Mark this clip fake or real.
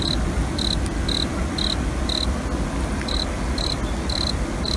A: real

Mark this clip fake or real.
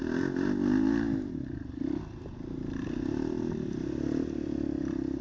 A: real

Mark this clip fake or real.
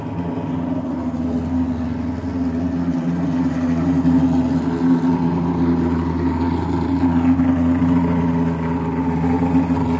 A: real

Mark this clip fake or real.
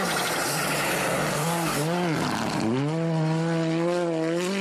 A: real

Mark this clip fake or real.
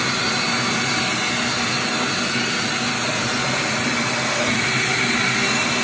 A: real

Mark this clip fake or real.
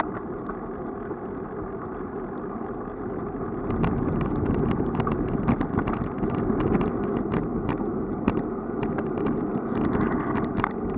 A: real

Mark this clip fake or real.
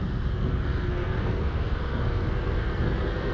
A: fake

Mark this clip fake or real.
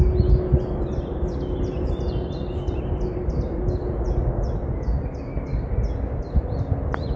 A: real